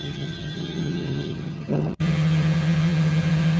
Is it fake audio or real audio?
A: fake